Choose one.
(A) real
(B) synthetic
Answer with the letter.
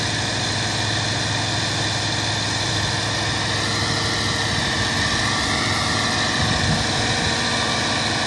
A